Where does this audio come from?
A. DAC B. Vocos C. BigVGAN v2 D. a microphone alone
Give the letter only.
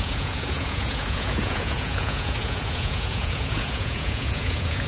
B